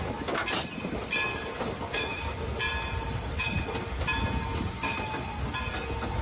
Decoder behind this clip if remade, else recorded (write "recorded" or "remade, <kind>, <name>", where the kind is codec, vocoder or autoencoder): recorded